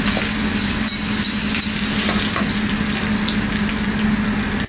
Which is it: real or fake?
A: real